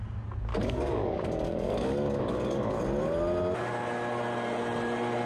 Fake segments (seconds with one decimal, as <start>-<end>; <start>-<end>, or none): 0.5-2.8